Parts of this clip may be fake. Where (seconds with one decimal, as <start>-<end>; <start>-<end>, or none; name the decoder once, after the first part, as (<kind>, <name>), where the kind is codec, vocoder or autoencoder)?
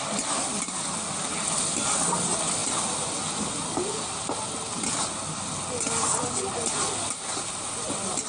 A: none